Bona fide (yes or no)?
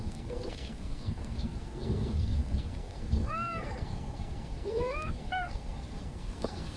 no